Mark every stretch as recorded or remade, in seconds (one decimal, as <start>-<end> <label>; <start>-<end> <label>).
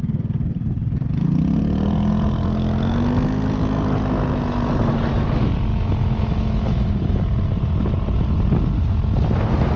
0.0-5.7 recorded; 5.7-7.2 remade; 7.2-9.8 recorded